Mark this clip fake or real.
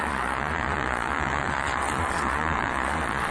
fake